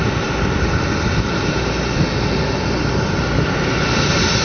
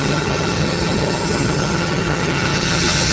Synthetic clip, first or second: second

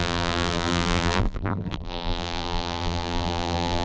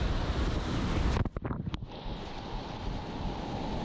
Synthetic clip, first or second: first